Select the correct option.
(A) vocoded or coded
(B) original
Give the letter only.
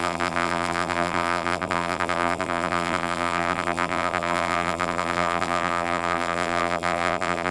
A